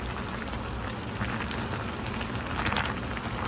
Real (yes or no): yes